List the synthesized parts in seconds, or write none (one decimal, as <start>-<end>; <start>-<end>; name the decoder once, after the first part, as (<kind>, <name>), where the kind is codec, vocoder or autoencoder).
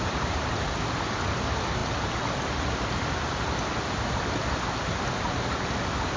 0.0-6.2 (vocoder, BigVGAN v2)